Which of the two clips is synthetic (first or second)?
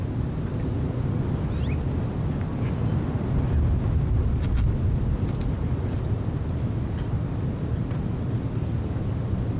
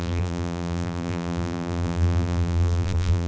second